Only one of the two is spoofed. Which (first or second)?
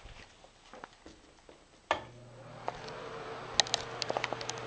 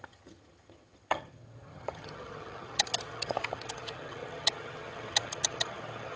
second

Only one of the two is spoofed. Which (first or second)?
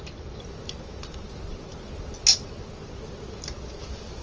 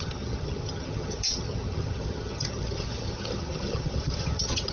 second